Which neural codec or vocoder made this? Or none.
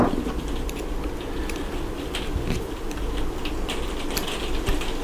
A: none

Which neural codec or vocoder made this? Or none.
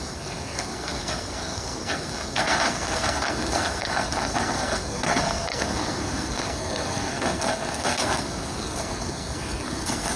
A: codec, SNAC